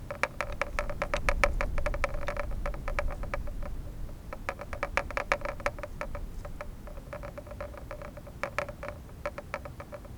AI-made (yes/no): no